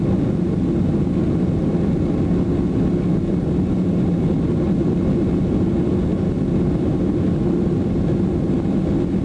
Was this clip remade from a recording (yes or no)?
no